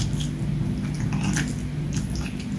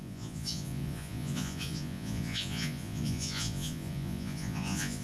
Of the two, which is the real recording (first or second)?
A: first